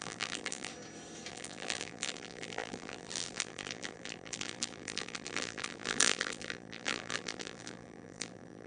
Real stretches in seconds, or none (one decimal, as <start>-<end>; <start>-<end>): 0.7-1.3